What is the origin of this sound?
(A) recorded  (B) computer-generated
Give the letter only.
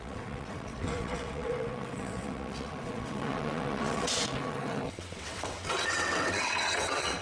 B